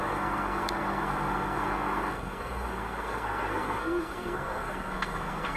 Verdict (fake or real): fake